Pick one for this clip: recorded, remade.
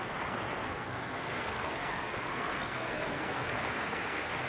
remade